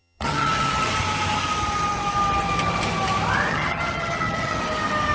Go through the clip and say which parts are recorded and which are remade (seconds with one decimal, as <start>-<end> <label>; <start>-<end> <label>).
0.0-0.9 remade; 0.9-3.5 recorded; 3.5-4.6 remade; 4.6-5.1 recorded